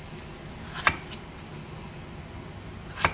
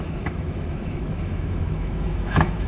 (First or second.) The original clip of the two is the first